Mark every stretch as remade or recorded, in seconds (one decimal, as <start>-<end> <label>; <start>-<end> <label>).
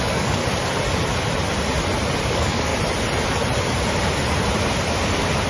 0.0-0.4 remade; 0.4-2.2 recorded; 2.2-2.7 remade; 2.7-5.5 recorded